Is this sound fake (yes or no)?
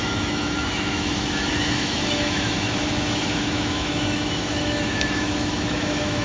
yes